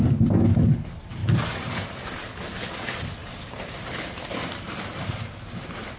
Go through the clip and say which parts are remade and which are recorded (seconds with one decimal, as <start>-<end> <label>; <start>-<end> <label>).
0.0-1.2 recorded; 1.2-2.0 remade; 2.0-3.2 recorded; 3.2-6.0 remade